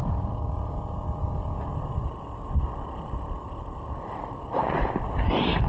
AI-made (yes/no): no